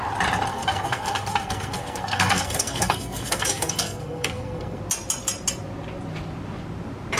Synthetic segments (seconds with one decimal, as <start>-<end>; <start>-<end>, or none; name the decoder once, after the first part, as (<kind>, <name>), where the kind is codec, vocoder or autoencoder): 0.5-4.8 (codec, SNAC)